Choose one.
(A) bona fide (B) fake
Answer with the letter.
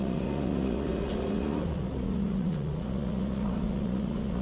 B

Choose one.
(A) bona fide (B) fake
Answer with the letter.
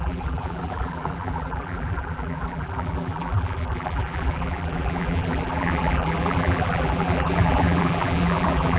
B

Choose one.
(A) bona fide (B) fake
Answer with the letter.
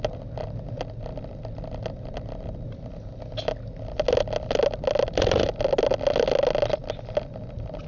A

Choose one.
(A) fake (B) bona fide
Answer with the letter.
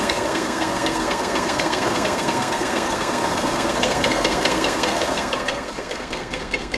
A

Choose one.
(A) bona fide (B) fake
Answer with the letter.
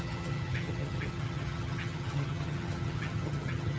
B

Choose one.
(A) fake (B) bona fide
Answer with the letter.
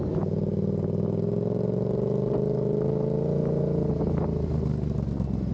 B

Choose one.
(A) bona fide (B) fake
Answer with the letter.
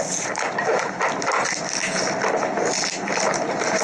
A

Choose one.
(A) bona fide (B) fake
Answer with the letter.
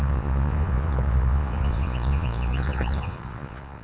B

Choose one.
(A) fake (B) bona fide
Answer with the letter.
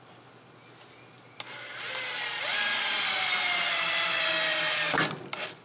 B